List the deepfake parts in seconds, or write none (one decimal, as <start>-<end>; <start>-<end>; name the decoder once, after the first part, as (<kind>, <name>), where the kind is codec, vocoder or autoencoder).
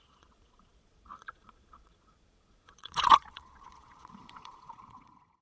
0.0-5.4 (vocoder, Vocos)